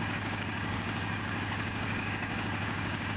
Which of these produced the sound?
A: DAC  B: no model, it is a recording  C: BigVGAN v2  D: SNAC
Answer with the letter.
A